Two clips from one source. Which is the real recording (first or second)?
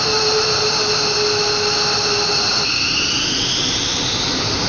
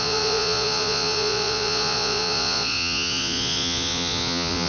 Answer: first